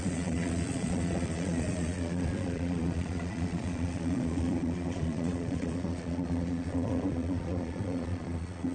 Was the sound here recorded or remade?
remade